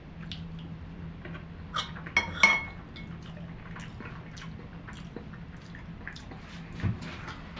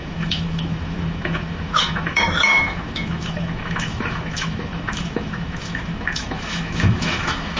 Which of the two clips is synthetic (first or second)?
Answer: second